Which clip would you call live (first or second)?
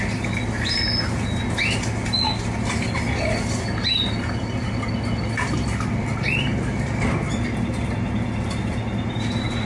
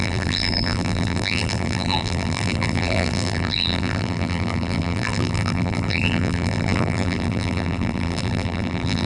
first